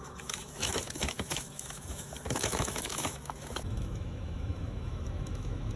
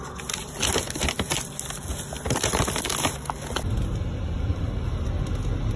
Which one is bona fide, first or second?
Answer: second